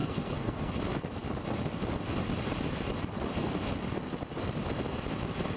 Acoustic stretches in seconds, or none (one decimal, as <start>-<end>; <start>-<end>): 0.7-5.6